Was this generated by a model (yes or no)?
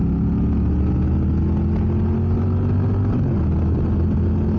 no